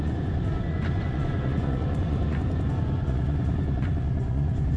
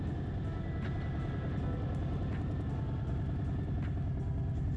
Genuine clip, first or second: second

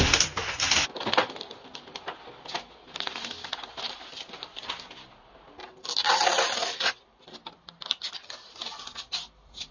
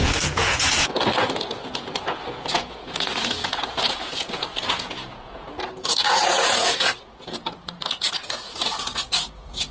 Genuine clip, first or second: first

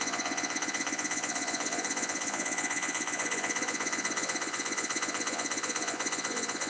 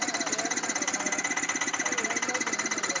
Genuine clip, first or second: second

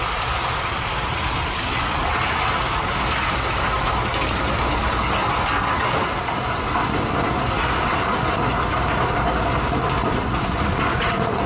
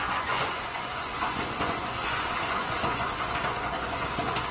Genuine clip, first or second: first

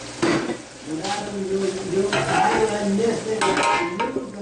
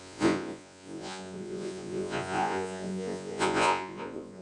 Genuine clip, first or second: first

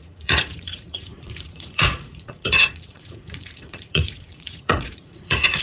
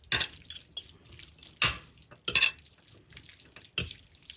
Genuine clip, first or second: second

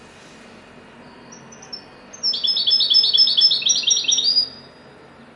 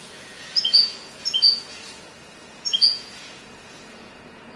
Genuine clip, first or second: first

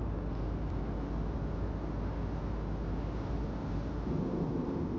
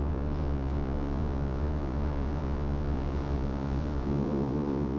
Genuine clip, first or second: first